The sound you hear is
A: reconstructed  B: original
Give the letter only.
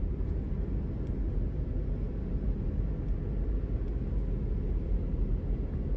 B